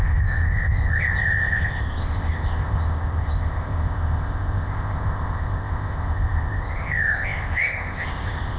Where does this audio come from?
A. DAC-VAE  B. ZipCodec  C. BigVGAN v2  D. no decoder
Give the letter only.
B